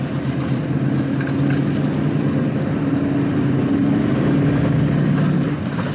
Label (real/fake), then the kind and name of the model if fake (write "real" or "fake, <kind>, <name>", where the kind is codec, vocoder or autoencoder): real